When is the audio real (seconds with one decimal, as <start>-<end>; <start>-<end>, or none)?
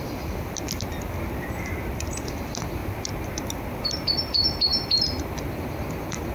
0.0-2.8; 3.9-6.3